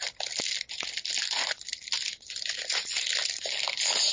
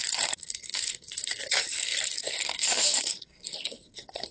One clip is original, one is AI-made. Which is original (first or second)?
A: first